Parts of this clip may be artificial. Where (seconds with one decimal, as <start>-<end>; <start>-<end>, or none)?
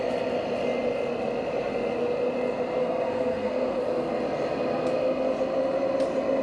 2.8-3.8